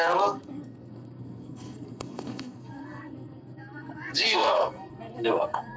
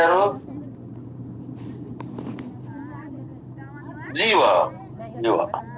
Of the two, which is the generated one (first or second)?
first